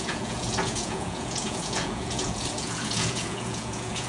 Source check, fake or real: fake